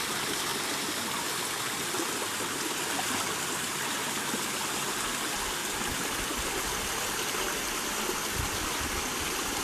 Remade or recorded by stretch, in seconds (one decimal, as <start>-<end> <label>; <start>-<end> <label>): 0.0-9.6 recorded